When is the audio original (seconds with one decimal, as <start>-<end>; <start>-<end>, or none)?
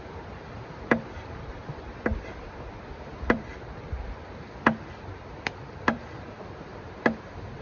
3.5-5.7